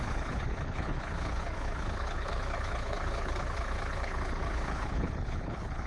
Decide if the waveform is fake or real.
fake